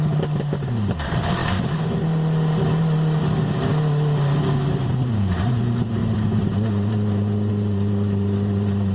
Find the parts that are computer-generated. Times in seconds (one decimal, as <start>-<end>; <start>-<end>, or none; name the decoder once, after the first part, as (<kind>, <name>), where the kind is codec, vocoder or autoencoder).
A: 0.0-1.4 (vocoder, BigVGAN v2); 4.7-8.9